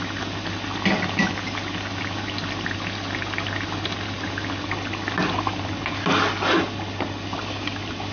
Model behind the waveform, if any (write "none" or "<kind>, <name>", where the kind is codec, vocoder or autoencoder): none